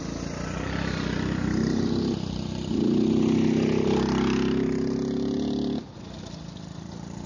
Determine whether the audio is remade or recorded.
recorded